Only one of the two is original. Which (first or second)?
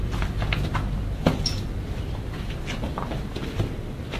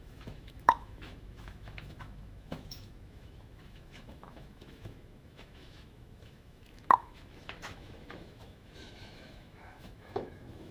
first